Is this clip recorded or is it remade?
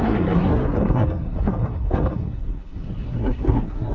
remade